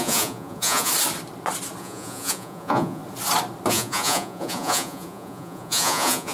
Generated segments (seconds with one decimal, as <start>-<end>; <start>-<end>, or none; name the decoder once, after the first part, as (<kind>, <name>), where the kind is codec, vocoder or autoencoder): 0.0-0.9 (vocoder, Vocos); 1.8-3.0; 3.7-6.3